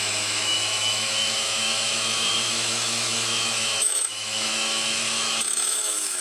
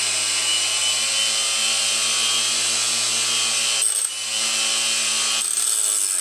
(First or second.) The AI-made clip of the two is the first